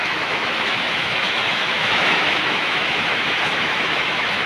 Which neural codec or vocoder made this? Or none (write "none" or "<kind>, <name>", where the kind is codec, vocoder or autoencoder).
autoencoder, DAC-VAE